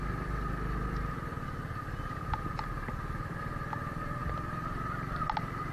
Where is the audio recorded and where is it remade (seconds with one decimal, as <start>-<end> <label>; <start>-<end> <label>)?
0.0-5.7 recorded